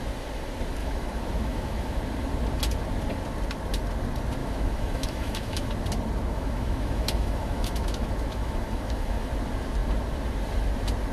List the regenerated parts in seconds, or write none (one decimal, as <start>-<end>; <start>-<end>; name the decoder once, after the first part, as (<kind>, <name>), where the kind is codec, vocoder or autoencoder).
0.8-2.0 (autoencoder, DAC-VAE); 4.4-5.7; 6.3-9.3

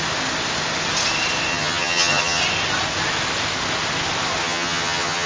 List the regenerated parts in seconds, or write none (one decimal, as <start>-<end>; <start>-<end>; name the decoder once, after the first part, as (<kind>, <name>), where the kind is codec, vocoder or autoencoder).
1.5-2.4 (vocoder, HiFi-GAN); 4.4-5.3

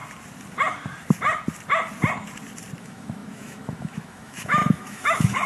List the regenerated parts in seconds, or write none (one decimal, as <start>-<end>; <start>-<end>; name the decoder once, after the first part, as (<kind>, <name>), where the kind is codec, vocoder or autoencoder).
2.8-5.5 (autoencoder, DAC-VAE)

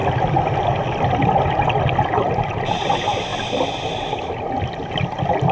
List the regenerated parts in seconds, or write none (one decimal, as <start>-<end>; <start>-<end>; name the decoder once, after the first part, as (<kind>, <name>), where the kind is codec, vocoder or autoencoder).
none

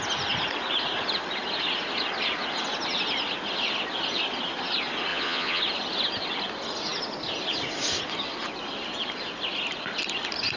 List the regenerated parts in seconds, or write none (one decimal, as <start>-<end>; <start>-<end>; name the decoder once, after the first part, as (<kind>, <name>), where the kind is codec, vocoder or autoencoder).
5.1-5.6 (vocoder, Vocos)

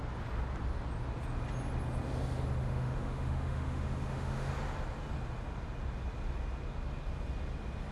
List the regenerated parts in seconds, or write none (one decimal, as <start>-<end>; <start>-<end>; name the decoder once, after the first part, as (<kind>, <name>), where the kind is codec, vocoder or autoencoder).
2.6-4.5 (autoencoder, DAC-VAE)

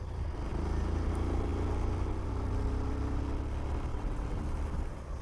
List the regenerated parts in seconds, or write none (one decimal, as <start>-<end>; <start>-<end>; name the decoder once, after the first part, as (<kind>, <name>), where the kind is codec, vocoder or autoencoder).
3.9-4.4 (vocoder, WaveNeXt)

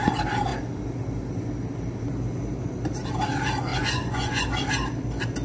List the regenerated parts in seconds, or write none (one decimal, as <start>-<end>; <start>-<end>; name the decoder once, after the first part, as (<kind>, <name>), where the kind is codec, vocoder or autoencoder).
3.7-4.4 (vocoder, Vocos)